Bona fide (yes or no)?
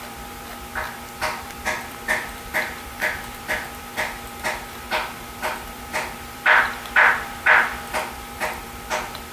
no